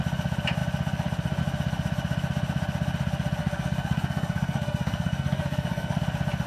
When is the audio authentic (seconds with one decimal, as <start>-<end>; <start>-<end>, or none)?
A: 0.0-3.4; 6.0-6.5